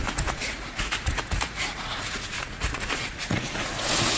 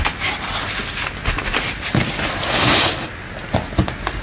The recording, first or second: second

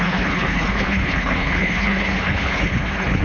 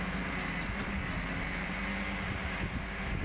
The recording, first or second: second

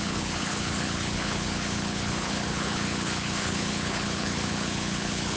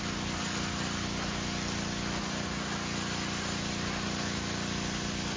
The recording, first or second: second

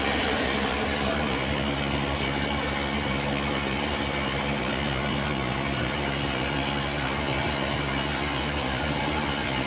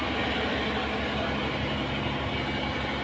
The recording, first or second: second